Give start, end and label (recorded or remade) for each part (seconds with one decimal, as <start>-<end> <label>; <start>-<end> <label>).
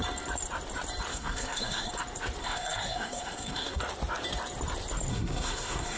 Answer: 0.0-1.1 recorded; 1.1-1.9 remade; 1.9-2.4 recorded; 2.4-3.8 remade; 3.8-5.1 recorded; 5.1-6.0 remade